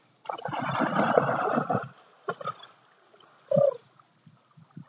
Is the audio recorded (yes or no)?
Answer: yes